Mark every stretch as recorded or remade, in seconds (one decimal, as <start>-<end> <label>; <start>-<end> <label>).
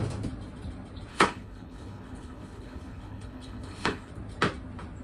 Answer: 0.0-1.1 recorded; 1.1-4.1 remade; 4.1-5.0 recorded